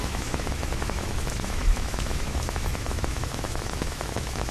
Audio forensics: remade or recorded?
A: remade